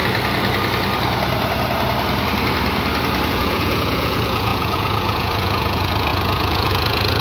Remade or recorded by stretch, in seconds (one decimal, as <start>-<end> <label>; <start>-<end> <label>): 0.0-3.3 recorded; 3.3-7.2 remade